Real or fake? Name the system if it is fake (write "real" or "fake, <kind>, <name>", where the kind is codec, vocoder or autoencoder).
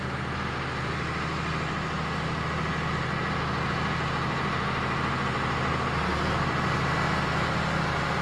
real